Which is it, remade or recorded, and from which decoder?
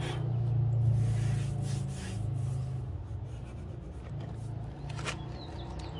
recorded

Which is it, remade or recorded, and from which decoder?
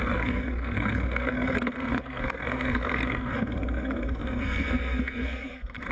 remade, codec, SNAC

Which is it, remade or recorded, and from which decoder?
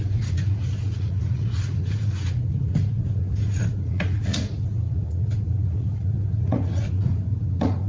remade, vocoder, Vocos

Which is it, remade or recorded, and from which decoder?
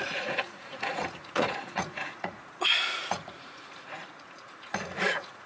remade, vocoder, Vocos